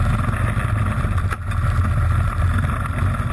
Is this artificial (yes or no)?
no